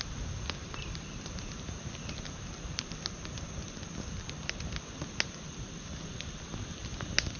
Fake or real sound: real